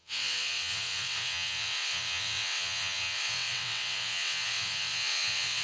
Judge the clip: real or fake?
fake